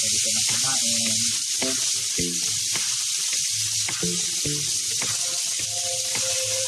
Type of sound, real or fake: real